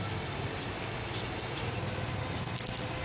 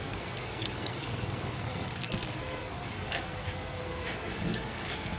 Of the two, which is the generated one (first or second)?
second